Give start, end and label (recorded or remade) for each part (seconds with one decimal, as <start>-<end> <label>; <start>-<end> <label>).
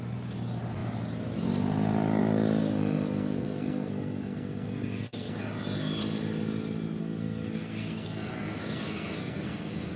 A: 0.0-2.6 recorded; 2.6-5.4 remade; 5.4-7.0 recorded; 7.0-10.0 remade